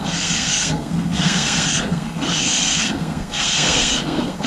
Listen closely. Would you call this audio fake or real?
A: fake